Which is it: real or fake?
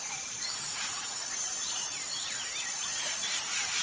fake